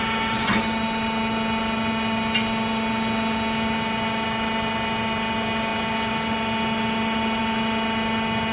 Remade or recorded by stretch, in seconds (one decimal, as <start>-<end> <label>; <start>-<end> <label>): 0.0-8.5 recorded